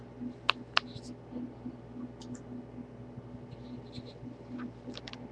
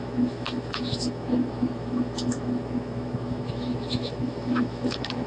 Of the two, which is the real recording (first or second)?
first